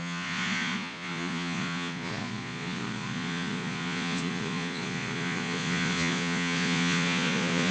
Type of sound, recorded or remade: remade